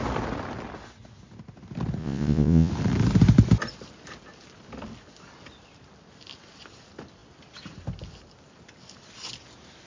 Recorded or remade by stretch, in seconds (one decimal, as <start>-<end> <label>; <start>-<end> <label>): 0.0-2.0 recorded; 2.0-2.7 remade; 2.7-9.9 recorded